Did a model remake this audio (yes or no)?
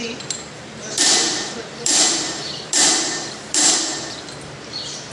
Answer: yes